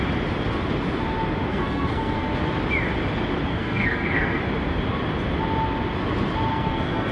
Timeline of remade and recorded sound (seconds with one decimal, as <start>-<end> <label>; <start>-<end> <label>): 0.0-1.5 recorded; 1.5-2.3 remade; 2.3-3.5 recorded; 3.5-4.4 remade; 4.4-6.5 recorded; 6.5-7.1 remade